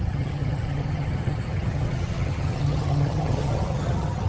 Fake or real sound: fake